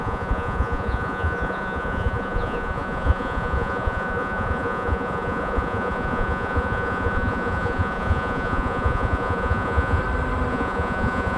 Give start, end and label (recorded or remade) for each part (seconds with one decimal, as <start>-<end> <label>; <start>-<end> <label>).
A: 0.0-10.0 remade; 10.0-10.5 recorded; 10.5-11.4 remade